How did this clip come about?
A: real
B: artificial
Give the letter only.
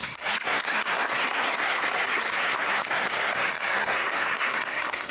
B